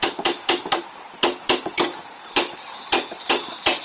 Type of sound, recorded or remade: recorded